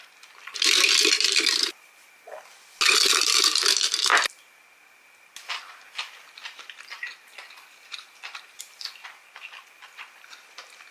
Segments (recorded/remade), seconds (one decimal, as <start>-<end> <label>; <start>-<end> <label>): 0.0-10.9 recorded